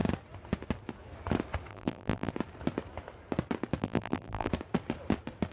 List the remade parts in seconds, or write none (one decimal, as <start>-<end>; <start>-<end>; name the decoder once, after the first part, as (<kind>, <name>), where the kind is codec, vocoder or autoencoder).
1.7-2.3 (vocoder, BigVGAN v2); 3.8-4.5